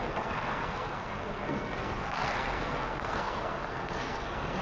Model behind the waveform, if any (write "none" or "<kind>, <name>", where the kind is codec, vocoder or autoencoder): codec, SNAC